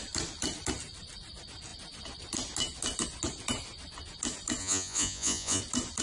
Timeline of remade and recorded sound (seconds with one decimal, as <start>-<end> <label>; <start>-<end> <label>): 0.0-4.6 recorded; 4.6-5.6 remade; 5.6-6.0 recorded